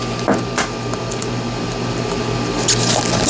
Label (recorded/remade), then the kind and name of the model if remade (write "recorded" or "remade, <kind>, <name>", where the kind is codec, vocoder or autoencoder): recorded